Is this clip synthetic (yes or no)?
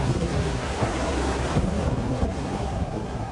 yes